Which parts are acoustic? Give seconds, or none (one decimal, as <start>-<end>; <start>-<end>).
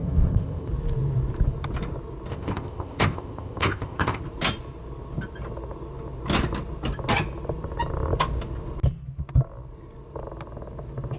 0.7-2.3; 4.2-11.2